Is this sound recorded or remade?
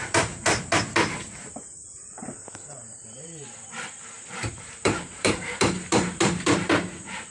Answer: remade